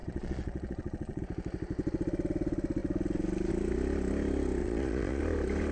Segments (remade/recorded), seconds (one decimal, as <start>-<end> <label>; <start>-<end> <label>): 0.0-1.2 remade; 1.2-4.6 recorded; 4.6-5.2 remade; 5.2-5.7 recorded